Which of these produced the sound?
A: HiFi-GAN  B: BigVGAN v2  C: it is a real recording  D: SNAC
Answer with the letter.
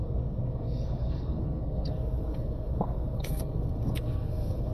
D